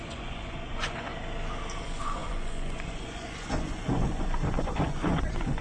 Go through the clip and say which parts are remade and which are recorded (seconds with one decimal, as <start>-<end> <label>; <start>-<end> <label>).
0.0-1.1 remade; 1.1-1.8 recorded; 1.8-5.6 remade

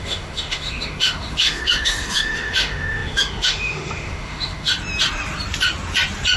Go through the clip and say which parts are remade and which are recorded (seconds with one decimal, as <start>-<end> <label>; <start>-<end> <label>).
0.0-4.7 remade; 4.7-6.4 recorded

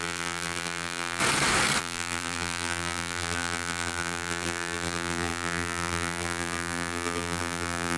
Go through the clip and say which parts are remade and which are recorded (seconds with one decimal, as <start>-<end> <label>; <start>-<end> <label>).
0.0-1.2 remade; 1.2-1.8 recorded; 1.8-8.0 remade

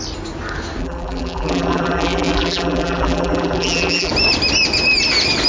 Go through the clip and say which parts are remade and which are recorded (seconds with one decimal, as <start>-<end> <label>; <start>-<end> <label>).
0.0-0.8 recorded; 0.8-4.1 remade; 4.1-5.5 recorded

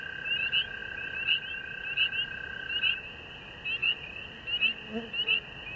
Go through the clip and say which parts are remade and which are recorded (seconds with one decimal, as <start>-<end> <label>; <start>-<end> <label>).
0.0-5.8 recorded